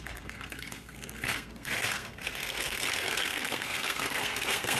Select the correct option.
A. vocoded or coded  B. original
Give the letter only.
A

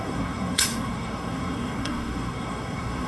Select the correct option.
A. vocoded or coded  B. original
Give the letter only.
A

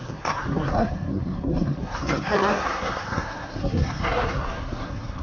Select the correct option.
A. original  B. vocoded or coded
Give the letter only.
B